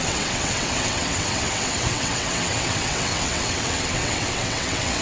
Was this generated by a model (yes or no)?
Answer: yes